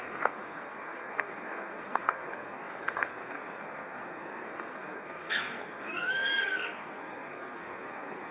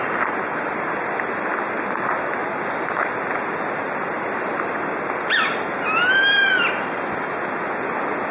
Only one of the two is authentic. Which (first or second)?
second